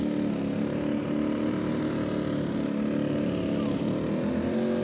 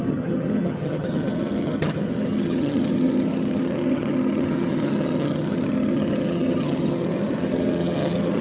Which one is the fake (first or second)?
second